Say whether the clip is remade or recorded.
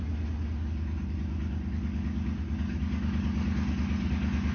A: recorded